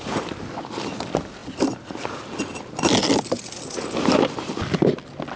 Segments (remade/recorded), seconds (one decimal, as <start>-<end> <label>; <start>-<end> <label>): 0.0-5.4 recorded